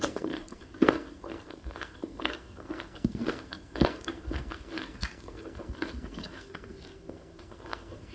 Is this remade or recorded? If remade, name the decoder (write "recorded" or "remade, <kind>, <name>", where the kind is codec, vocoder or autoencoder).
remade, codec, SNAC